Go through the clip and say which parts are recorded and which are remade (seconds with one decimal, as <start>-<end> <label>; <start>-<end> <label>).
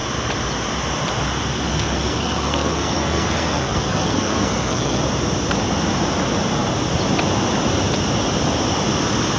0.0-1.7 recorded; 1.7-5.0 remade; 5.0-9.4 recorded